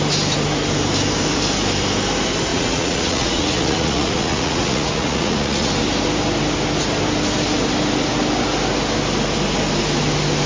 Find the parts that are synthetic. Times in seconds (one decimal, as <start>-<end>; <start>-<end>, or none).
2.5-5.7